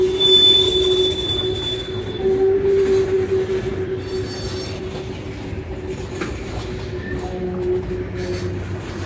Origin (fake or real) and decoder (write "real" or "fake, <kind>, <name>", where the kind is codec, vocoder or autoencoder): real